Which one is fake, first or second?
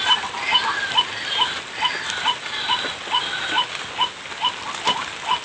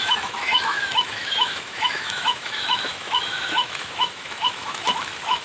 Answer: second